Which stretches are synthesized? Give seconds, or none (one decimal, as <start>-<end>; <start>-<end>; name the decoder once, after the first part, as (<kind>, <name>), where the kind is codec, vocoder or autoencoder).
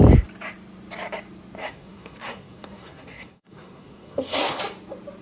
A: 1.6-4.6 (codec, SNAC)